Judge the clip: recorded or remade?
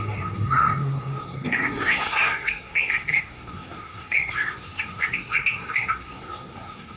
remade